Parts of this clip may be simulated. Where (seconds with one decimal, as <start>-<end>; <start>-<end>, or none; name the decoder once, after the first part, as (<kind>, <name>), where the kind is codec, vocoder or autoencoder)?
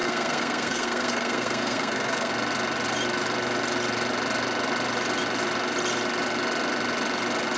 0.0-2.3 (codec, SNAC)